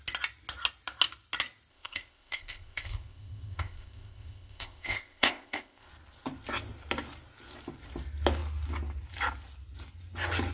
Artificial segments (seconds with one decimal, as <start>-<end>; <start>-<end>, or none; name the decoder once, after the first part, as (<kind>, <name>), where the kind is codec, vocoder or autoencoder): 1.7-5.9 (codec, ZipCodec)